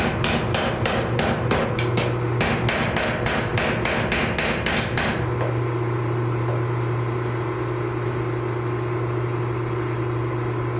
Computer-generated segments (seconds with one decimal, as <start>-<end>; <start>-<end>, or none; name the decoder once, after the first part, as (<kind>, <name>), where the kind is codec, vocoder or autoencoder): none